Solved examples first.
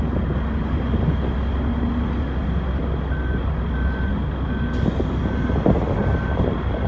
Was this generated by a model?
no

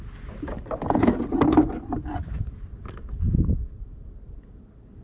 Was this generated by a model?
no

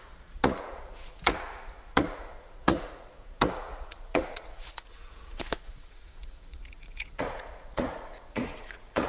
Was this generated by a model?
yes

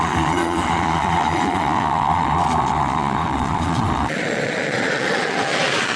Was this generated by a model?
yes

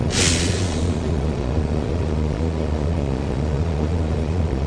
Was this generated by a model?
yes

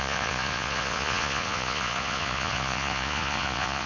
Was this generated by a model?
yes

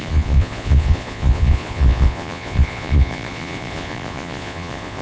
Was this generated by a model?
yes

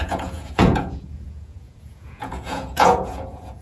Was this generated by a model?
yes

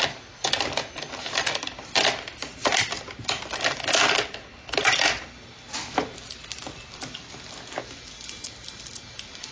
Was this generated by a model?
no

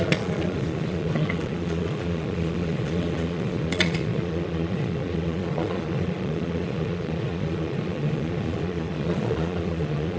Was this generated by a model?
yes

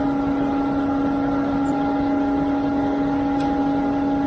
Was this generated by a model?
no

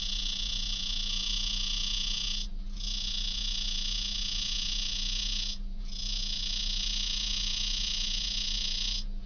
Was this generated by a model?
yes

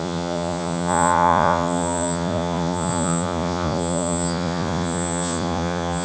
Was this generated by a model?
yes